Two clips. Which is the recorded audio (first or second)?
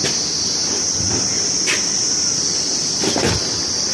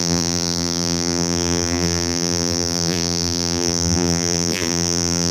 first